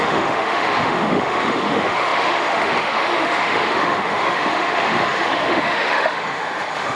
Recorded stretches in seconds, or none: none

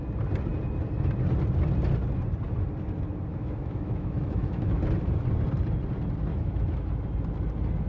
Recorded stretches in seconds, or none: 0.0-3.3; 4.8-6.3; 6.9-7.9

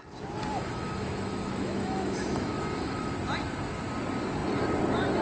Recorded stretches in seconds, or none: 0.0-0.5; 3.1-5.2

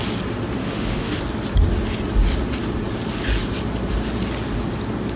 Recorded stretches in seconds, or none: 0.0-0.6; 1.2-5.2

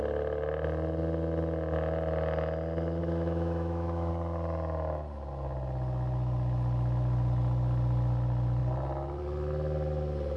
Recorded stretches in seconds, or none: 0.0-3.0; 4.1-10.4

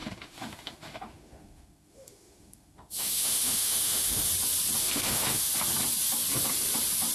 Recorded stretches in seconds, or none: 4.3-4.8; 5.5-7.1